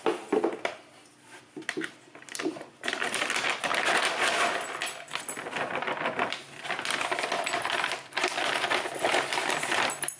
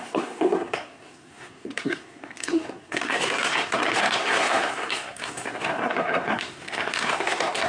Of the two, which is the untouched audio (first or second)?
first